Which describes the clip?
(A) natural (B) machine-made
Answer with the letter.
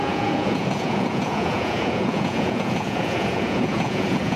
B